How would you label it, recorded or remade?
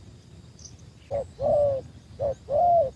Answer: recorded